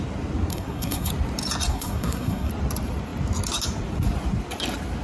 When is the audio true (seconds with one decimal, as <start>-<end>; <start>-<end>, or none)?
0.0-0.5; 1.1-1.7; 2.5-5.0